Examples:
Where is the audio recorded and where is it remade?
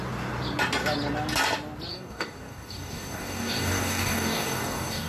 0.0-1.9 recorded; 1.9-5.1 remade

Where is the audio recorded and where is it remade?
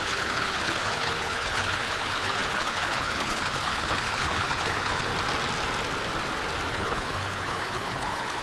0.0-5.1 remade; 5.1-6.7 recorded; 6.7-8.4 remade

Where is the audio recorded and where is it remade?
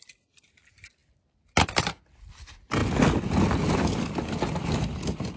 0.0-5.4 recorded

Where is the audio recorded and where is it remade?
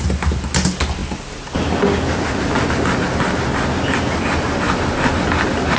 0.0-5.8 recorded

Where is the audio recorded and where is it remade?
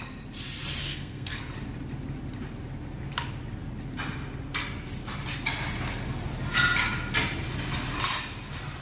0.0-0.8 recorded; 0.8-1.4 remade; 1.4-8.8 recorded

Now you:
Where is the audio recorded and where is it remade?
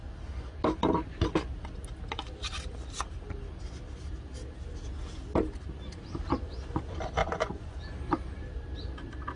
0.0-7.2 recorded; 7.2-7.8 remade; 7.8-9.4 recorded